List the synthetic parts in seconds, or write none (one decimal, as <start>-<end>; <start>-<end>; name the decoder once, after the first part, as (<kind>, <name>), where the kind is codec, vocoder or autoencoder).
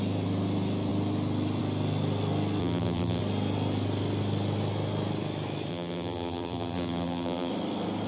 2.6-3.2 (vocoder, BigVGAN v2); 5.7-7.5